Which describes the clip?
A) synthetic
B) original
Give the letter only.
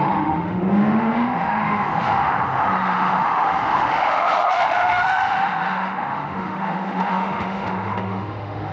A